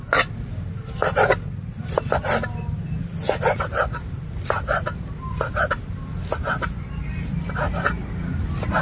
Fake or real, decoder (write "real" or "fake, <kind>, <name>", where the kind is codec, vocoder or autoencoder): real